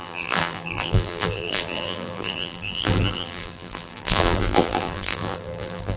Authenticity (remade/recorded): remade